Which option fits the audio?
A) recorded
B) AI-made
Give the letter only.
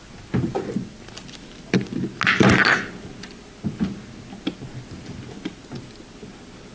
A